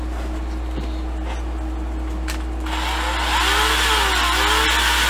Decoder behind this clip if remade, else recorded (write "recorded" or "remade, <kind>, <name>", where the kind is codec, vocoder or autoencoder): recorded